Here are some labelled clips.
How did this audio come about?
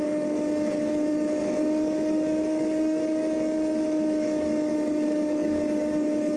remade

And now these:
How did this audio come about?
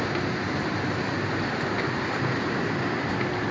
recorded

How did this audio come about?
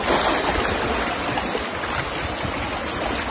recorded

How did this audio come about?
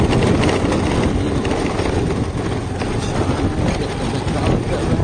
recorded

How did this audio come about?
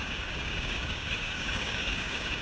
remade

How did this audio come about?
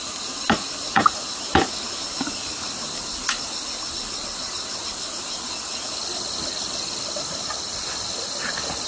recorded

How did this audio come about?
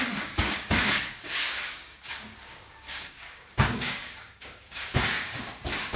remade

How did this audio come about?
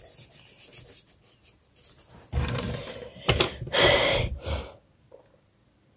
recorded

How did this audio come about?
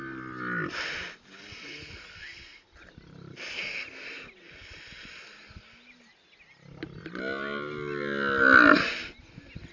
recorded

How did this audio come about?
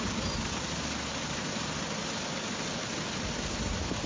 recorded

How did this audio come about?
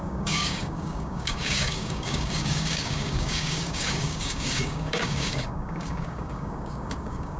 remade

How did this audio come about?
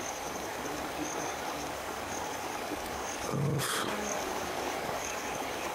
remade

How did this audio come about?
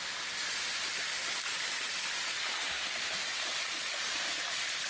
recorded